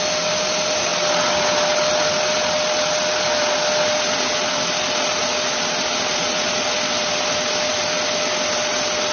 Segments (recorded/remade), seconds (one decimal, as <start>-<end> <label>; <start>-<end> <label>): 0.0-9.1 recorded